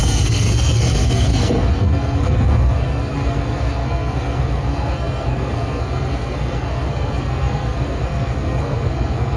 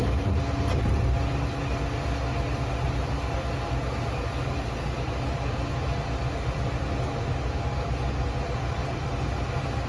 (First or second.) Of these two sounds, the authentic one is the second